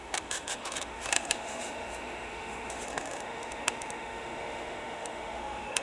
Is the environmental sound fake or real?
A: fake